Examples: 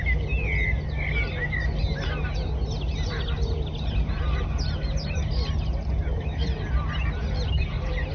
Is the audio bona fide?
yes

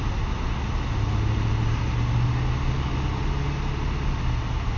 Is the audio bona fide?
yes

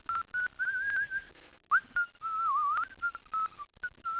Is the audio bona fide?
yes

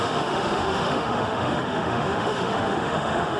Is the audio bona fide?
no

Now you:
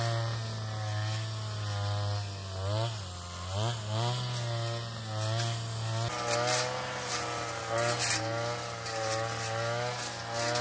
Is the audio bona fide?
yes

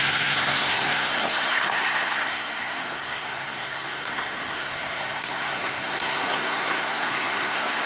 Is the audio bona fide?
no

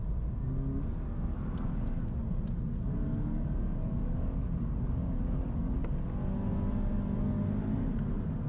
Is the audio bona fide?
yes